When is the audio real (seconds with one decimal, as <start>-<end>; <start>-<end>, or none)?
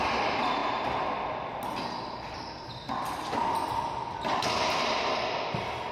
0.0-5.9